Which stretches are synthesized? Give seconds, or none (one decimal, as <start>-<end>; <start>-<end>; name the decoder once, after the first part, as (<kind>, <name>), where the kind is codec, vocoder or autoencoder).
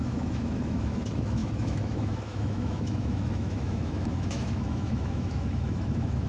0.0-6.3 (autoencoder, DAC-VAE)